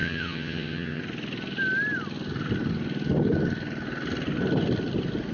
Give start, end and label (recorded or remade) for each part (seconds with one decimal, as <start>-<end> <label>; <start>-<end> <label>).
0.0-1.0 remade; 1.0-5.3 recorded